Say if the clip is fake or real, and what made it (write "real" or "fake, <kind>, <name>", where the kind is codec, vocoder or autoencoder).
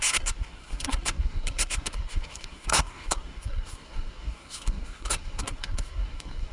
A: fake, codec, SNAC